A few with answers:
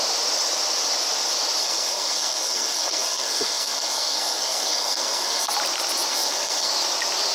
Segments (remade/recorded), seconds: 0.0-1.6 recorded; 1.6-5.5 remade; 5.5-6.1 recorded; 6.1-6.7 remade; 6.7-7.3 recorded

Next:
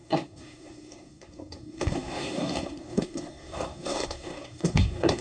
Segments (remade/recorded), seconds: 0.0-5.2 remade

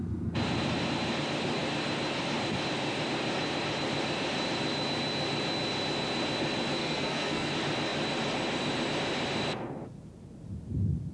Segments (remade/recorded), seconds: 0.0-6.8 recorded; 6.8-7.5 remade; 7.5-11.1 recorded

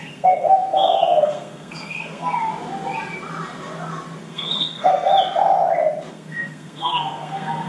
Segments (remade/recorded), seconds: 0.0-2.5 remade; 2.5-4.2 recorded; 4.2-5.1 remade; 5.1-6.1 recorded; 6.1-7.7 remade